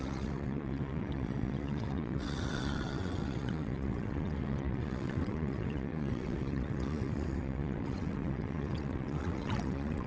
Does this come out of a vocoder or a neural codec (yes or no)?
yes